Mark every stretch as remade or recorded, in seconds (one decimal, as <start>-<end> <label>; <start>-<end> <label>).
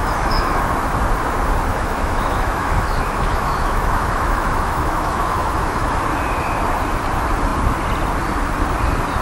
0.0-0.6 remade; 0.6-1.7 recorded; 1.7-6.0 remade; 6.0-9.2 recorded